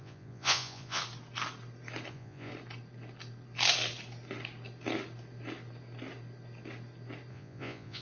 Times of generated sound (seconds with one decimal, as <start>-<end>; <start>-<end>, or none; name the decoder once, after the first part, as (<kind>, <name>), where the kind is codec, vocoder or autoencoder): 0.0-1.0 (vocoder, Vocos); 2.1-2.5; 7.3-8.0